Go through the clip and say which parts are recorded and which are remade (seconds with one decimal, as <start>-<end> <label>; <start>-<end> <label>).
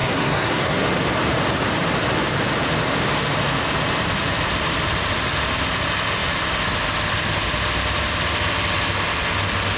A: 0.0-0.9 remade; 0.9-9.8 recorded